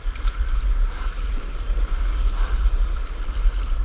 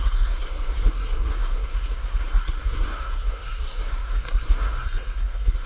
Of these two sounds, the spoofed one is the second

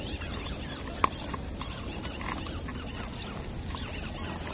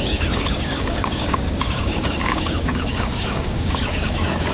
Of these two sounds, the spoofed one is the second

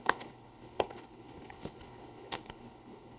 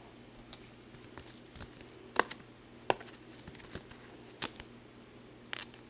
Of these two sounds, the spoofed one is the first